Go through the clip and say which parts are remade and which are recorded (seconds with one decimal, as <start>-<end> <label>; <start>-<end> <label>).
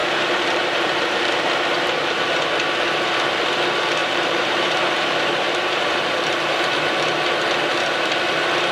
0.0-1.3 remade; 1.3-4.0 recorded; 4.0-6.4 remade; 6.4-8.7 recorded